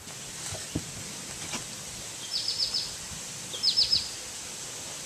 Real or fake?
real